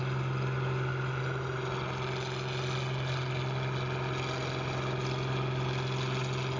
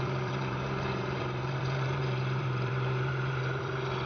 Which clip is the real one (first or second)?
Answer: first